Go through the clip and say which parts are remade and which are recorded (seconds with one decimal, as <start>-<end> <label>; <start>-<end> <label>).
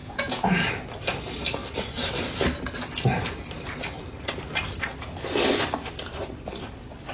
0.0-0.7 remade; 0.7-7.1 recorded